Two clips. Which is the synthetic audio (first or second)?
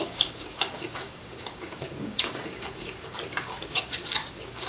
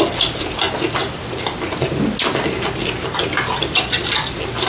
first